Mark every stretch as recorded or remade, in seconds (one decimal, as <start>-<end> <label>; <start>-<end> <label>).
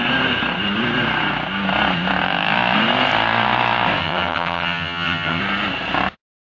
0.0-4.0 recorded; 4.0-5.4 remade; 5.4-6.5 recorded